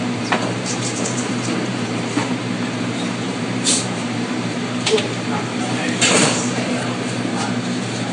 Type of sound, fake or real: fake